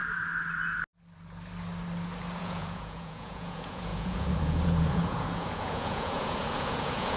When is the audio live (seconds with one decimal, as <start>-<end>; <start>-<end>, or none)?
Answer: 0.0-2.4

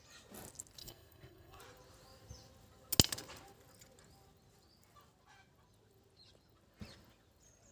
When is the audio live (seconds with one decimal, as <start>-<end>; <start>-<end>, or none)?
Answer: 0.0-0.8; 1.6-7.7

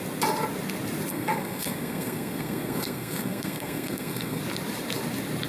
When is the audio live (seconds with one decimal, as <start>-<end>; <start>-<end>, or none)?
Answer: 0.0-1.1; 4.4-5.5

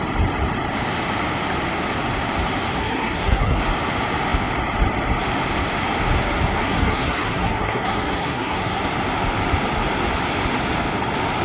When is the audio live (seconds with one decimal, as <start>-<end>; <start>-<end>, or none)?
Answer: 0.0-2.8; 3.6-6.5; 8.8-11.4